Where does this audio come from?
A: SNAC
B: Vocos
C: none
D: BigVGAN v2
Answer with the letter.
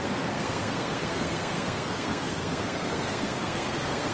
A